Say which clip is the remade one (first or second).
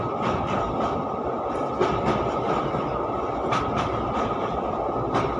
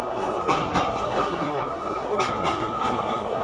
second